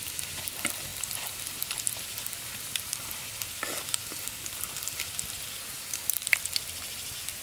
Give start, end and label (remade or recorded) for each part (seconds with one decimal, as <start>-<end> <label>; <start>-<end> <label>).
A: 0.0-7.4 recorded